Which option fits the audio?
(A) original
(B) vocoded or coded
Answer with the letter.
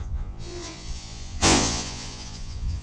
B